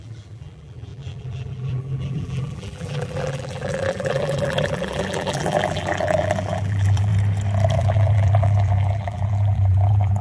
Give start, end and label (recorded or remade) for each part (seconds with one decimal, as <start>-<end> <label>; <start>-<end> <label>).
0.0-7.1 remade; 7.1-7.8 recorded; 7.8-10.2 remade